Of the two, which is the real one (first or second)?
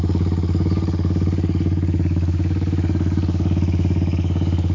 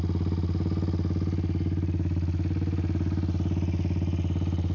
second